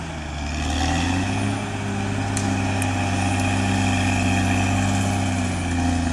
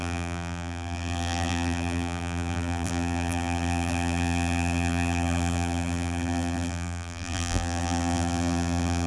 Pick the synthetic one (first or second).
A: second